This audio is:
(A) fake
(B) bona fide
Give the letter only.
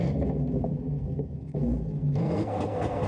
A